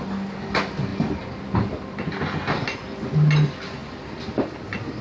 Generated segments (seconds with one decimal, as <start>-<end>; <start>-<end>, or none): none